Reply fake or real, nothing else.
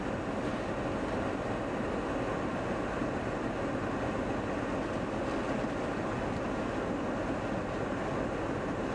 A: real